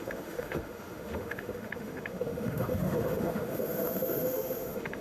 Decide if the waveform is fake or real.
fake